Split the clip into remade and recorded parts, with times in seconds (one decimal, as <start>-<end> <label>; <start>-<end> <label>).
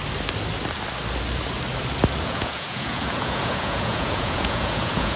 0.0-2.2 recorded; 2.2-5.2 remade